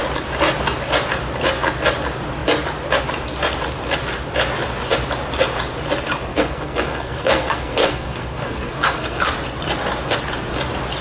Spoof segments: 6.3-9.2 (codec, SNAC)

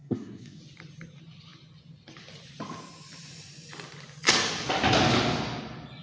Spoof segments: 0.0-0.6 (codec, SNAC)

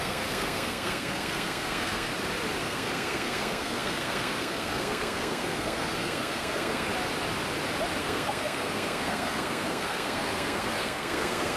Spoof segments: 0.0-2.1 (codec, SNAC); 2.6-6.9; 8.0-11.6

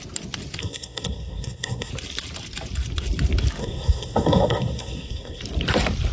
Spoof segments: 0.6-1.9 (codec, SNAC); 3.6-5.4

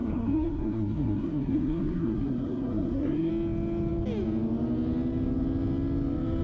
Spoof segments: 0.0-3.3 (codec, SNAC)

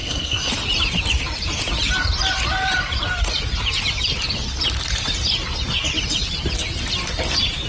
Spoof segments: 0.0-0.5 (codec, SNAC)

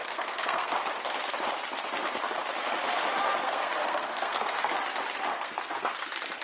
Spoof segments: 0.0-0.7 (codec, SNAC); 3.4-4.7; 5.3-6.0

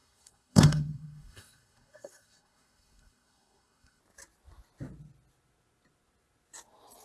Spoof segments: 0.0-4.0 (codec, SNAC)